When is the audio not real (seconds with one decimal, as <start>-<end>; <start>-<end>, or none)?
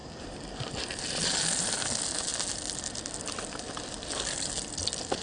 none